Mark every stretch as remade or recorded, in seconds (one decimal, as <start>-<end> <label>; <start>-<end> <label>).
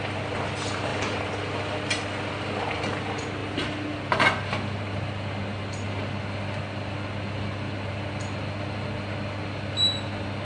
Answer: 0.0-10.4 recorded